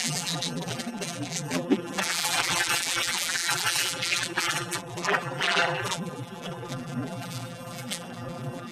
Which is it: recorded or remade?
remade